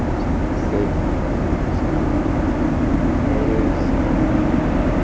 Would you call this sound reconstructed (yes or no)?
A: no